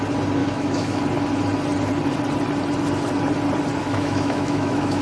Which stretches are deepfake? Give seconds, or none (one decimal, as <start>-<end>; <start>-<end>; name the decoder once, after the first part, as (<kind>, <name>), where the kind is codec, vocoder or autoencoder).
0.4-1.0 (autoencoder, DAC-VAE); 3.8-5.0